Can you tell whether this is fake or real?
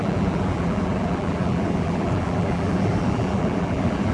fake